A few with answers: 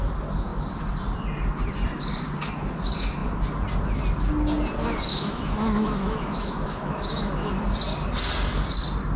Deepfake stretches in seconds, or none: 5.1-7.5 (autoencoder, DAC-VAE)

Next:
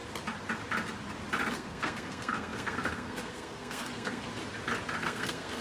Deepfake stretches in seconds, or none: 1.5-4.3 (codec, SNAC); 5.0-5.6

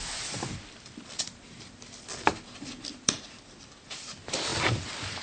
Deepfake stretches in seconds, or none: 0.0-5.2 (vocoder, BigVGAN v2)